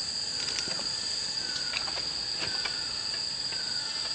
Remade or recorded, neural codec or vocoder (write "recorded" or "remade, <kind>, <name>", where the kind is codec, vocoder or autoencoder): recorded